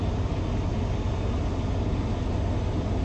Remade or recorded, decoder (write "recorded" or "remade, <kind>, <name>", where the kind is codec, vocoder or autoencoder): recorded